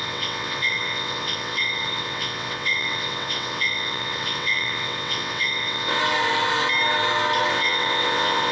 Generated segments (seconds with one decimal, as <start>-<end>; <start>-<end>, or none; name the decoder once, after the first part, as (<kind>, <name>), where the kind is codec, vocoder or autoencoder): 0.0-6.0 (vocoder, WaveNeXt); 7.5-8.5